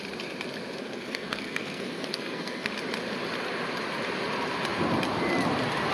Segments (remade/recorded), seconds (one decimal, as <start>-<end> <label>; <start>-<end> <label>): 0.0-0.8 recorded; 0.8-2.7 remade; 2.7-5.9 recorded